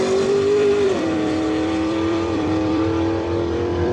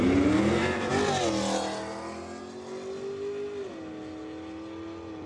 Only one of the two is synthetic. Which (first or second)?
first